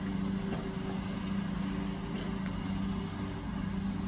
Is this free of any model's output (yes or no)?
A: yes